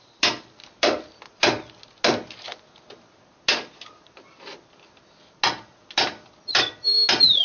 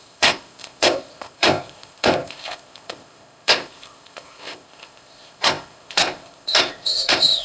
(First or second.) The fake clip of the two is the second